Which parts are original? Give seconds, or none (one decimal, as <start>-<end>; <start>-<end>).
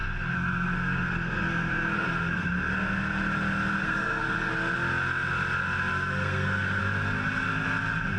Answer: 2.5-3.8; 4.5-5.9; 6.8-8.2